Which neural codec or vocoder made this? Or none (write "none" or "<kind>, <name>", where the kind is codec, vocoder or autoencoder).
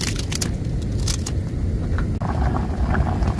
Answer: none